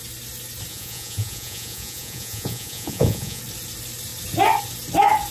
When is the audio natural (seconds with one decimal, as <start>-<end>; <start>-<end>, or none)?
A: 0.0-0.7; 3.4-5.3